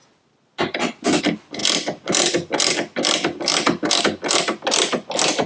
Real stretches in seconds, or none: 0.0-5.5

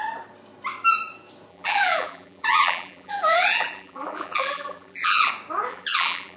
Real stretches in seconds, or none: 0.0-1.5; 5.3-5.7

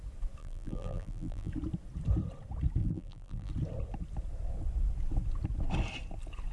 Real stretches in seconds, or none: 0.0-0.4; 1.5-2.8; 3.5-6.5

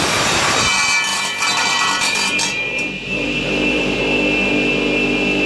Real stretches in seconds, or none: 0.0-1.1; 4.0-5.5